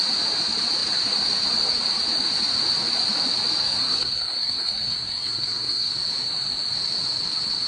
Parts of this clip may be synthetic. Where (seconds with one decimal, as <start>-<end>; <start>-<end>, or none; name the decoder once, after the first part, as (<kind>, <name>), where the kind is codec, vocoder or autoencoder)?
3.6-5.9 (codec, SNAC)

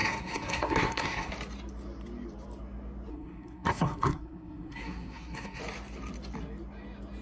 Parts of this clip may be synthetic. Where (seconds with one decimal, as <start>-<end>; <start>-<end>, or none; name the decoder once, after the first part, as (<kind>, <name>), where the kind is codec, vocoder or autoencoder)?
0.0-1.3 (codec, SNAC); 3.1-5.6

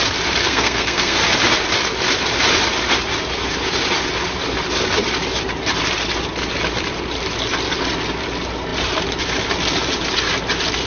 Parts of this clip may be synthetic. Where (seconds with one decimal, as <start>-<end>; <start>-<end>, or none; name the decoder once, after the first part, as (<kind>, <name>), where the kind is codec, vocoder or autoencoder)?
0.4-1.2 (codec, SNAC)

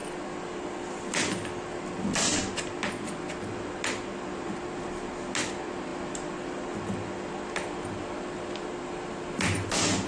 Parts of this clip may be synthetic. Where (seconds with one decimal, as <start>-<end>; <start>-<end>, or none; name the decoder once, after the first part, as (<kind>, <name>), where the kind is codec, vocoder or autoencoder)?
none

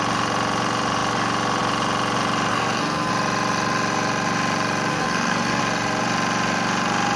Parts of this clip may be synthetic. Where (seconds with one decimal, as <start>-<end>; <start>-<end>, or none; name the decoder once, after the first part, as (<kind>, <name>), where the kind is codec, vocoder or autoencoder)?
2.5-3.1 (codec, SNAC); 4.9-5.6

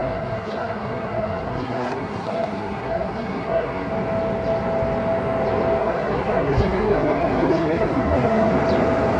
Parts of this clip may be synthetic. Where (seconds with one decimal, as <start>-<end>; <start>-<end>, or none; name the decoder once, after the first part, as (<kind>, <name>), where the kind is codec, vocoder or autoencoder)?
0.0-3.9 (codec, SNAC); 5.8-8.5

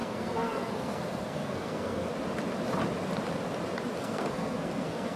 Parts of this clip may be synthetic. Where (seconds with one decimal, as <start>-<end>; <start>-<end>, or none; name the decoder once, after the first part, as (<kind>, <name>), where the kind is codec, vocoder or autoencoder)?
0.0-2.1 (codec, SNAC); 4.0-5.2